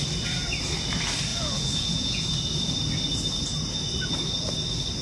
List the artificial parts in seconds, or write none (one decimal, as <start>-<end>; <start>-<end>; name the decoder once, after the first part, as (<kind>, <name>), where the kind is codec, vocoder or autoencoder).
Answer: 1.3-2.2 (vocoder, Vocos)